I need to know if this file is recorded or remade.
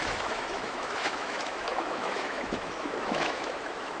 remade